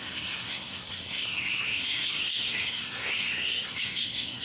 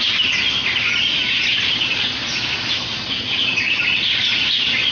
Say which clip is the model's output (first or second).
first